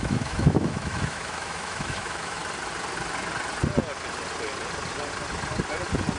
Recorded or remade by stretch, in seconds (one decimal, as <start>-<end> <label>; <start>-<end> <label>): 0.0-2.4 remade; 2.4-6.2 recorded

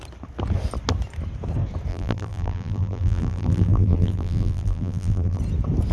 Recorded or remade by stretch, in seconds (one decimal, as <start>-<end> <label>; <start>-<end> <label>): 0.0-1.9 recorded; 1.9-5.4 remade; 5.4-5.9 recorded